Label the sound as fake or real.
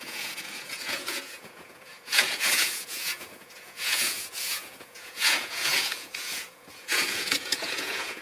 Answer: fake